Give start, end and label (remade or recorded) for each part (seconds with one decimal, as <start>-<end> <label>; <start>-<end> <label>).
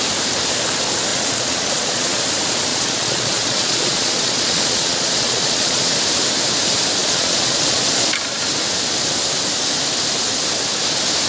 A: 0.0-1.1 recorded; 1.1-2.2 remade; 2.2-2.7 recorded; 2.7-5.9 remade; 5.9-7.0 recorded; 7.0-7.9 remade; 7.9-11.3 recorded